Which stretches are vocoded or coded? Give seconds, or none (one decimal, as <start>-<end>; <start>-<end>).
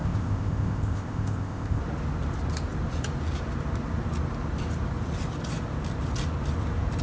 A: 0.0-1.8